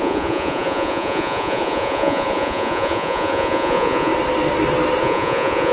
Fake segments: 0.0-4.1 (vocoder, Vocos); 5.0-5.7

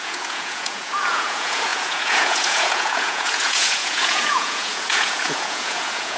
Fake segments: 0.0-6.2 (vocoder, Vocos)

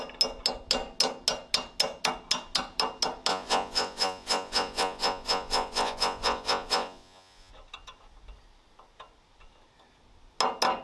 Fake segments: 3.3-7.5 (vocoder, Vocos)

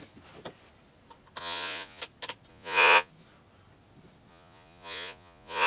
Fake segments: 1.4-2.0 (vocoder, Vocos); 2.5-3.1; 4.3-5.7

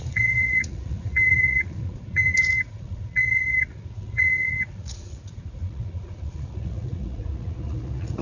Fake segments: 0.0-8.2 (vocoder, Vocos)

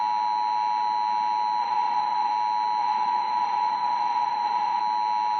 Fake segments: 1.6-2.3 (vocoder, Vocos); 2.8-4.8

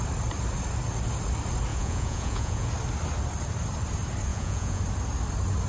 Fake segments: 1.7-2.7 (vocoder, Vocos); 4.3-4.8

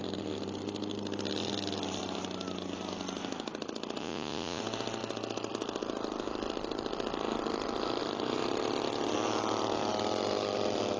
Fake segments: 4.0-4.6 (vocoder, Vocos)